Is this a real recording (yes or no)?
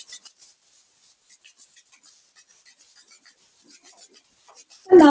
yes